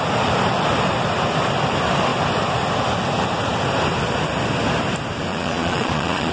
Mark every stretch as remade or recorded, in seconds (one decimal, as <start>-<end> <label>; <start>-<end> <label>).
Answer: 0.0-5.3 recorded; 5.3-6.3 remade